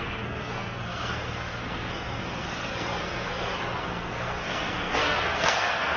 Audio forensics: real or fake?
fake